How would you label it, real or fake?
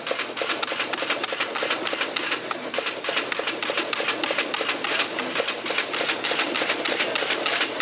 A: real